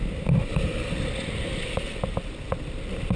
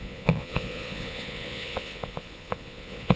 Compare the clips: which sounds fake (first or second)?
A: second